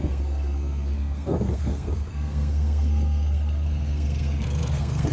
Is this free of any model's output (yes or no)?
no